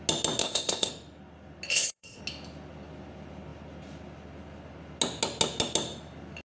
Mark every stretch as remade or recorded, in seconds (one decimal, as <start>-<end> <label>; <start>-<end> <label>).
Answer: 0.0-0.4 recorded; 0.4-0.9 remade; 0.9-1.7 recorded; 1.7-2.2 remade; 2.2-6.5 recorded